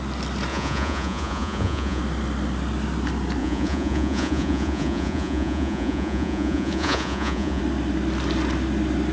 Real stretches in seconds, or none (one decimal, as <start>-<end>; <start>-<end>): 0.0-0.5; 2.0-3.4; 7.6-9.1